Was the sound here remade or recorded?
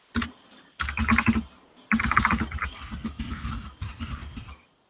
recorded